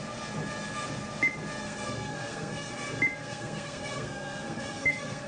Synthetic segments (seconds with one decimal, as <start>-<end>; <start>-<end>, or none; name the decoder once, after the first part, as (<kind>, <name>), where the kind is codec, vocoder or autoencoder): 1.6-2.7 (codec, SNAC); 3.2-5.3